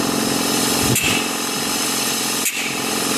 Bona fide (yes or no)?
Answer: no